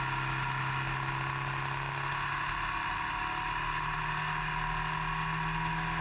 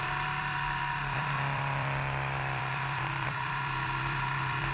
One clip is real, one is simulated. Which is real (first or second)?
first